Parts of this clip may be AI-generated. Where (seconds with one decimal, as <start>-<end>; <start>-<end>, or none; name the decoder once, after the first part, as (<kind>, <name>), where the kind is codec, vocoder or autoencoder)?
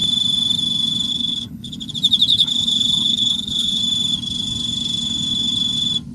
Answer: 1.1-1.9 (codec, HILCodec); 2.3-3.8